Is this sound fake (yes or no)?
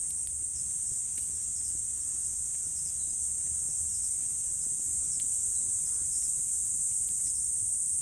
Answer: no